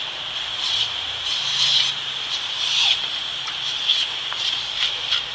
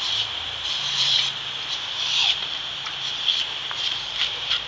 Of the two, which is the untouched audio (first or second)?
second